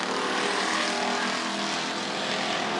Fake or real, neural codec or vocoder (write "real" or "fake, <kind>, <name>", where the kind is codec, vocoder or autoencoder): real